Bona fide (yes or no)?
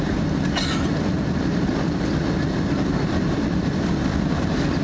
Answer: no